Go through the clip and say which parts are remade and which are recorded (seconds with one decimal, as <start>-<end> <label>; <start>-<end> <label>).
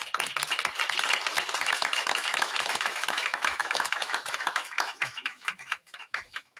0.0-1.6 recorded; 1.6-6.6 remade